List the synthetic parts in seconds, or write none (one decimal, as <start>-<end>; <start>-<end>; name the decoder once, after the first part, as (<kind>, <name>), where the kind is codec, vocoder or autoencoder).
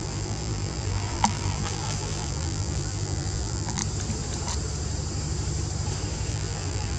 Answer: 0.0-3.8 (vocoder, BigVGAN v2); 6.3-7.0